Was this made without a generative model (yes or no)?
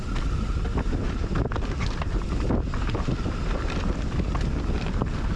yes